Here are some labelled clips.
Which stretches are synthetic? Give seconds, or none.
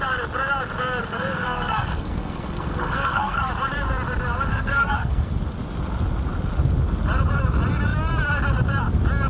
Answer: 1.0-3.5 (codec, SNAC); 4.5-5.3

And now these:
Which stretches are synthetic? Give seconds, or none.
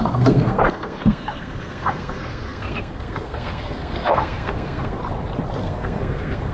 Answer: 0.0-5.0 (codec, SNAC); 5.6-6.5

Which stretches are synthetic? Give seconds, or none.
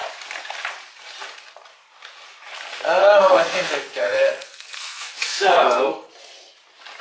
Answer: 3.0-6.1 (codec, SNAC)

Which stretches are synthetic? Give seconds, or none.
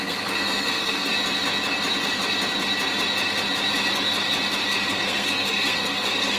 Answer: 0.0-1.1 (codec, SNAC); 4.9-6.4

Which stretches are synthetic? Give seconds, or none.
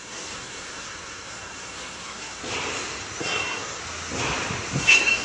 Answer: 0.0-2.4 (codec, SNAC); 3.2-3.8; 4.8-5.2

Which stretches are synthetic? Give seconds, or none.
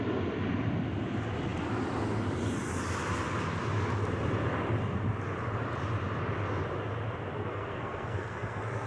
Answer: 7.3-8.9 (codec, SNAC)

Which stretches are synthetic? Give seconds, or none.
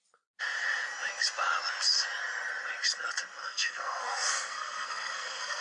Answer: 3.4-5.6 (codec, SNAC)